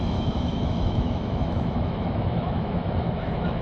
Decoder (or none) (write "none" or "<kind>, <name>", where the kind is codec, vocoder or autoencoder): autoencoder, DAC-VAE